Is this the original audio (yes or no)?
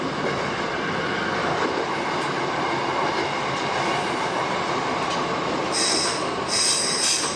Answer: no